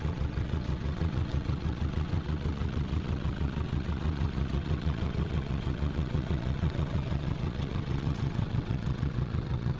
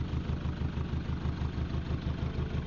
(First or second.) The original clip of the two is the second